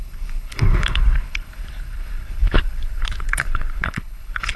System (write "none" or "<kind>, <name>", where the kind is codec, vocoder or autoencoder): codec, HILCodec